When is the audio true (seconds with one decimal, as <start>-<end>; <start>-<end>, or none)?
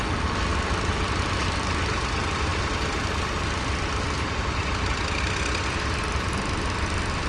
0.0-7.3